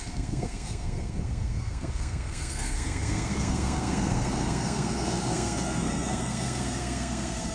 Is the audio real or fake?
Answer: fake